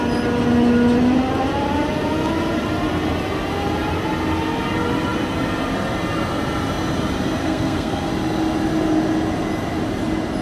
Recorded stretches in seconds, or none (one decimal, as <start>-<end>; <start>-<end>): 0.0-7.4; 8.1-10.4